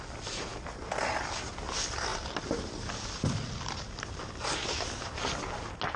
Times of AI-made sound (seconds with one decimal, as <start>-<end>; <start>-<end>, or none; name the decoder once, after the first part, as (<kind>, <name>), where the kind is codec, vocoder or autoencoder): none